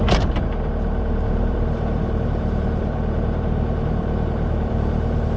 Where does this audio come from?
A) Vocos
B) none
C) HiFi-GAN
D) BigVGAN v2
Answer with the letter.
D